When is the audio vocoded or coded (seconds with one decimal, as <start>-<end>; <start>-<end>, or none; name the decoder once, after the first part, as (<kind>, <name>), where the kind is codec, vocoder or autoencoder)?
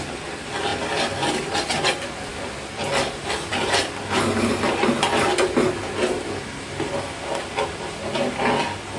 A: 0.7-1.3 (vocoder, BigVGAN v2); 2.3-3.5